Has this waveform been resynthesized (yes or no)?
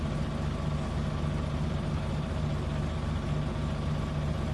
no